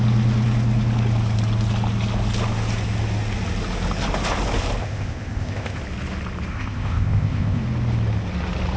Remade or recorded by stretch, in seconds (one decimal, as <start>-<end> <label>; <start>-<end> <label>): 0.0-4.8 recorded; 4.8-5.8 remade; 5.8-6.5 recorded; 6.5-7.6 remade; 7.6-8.8 recorded